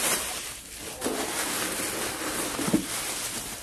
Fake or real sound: fake